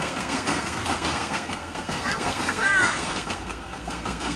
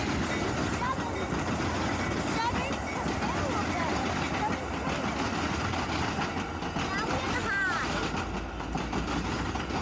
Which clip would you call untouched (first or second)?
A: second